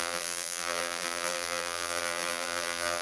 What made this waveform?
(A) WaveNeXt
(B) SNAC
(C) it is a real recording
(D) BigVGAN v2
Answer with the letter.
D